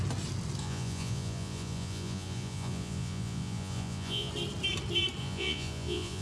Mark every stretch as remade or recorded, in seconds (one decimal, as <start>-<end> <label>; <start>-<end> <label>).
0.0-0.6 recorded; 0.6-4.3 remade; 4.3-5.2 recorded; 5.2-6.2 remade

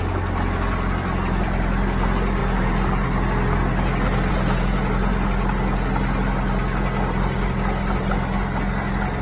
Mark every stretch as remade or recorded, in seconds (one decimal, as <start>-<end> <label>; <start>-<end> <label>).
0.0-9.2 recorded

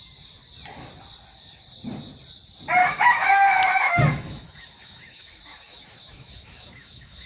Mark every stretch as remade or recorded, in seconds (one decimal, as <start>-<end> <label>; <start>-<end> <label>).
0.0-2.8 recorded; 2.8-7.3 remade

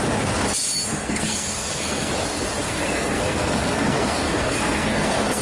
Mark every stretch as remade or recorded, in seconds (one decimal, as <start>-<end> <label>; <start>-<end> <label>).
0.0-0.9 recorded; 0.9-2.1 remade; 2.1-2.6 recorded; 2.6-5.4 remade

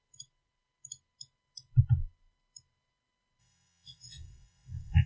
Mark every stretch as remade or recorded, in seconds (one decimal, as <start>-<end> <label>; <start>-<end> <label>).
0.0-3.4 recorded; 3.4-5.1 remade